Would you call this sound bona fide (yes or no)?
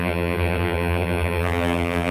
no